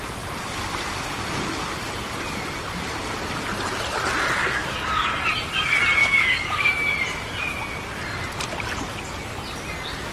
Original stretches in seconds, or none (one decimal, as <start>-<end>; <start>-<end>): 0.0-4.4; 5.1-6.0; 6.7-10.1